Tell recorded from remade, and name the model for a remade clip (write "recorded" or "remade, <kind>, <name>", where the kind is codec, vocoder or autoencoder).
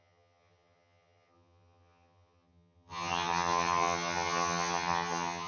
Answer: remade, vocoder, HiFi-GAN